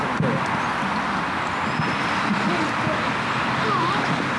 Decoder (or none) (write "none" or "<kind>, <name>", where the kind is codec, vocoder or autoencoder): none